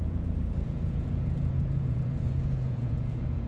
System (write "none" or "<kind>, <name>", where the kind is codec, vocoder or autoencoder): vocoder, Vocos